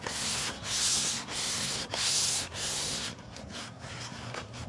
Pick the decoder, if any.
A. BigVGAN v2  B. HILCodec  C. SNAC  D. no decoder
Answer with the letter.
C